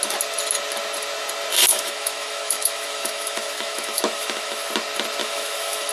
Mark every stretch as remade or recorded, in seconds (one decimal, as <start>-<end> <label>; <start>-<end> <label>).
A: 0.0-1.7 recorded; 1.7-4.7 remade; 4.7-5.2 recorded; 5.2-5.9 remade